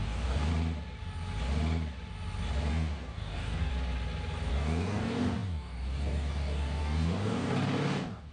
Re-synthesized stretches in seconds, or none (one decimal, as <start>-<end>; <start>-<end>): 0.0-0.5; 2.7-3.7; 4.5-8.3